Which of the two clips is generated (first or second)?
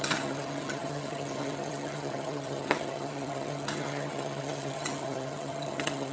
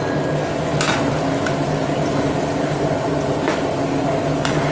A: first